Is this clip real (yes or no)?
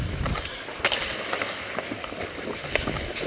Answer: yes